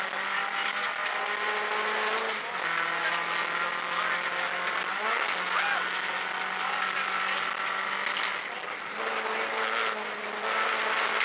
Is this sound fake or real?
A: real